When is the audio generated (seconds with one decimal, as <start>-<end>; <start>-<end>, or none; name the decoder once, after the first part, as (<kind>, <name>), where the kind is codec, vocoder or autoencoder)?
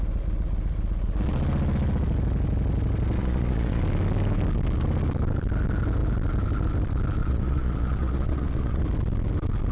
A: 3.2-3.8 (vocoder, Vocos); 7.2-8.8